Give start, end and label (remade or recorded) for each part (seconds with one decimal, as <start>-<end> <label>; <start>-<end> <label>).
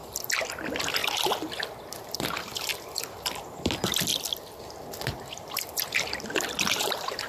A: 0.0-1.0 remade; 1.0-2.0 recorded; 2.0-4.1 remade; 4.1-4.6 recorded; 4.6-7.3 remade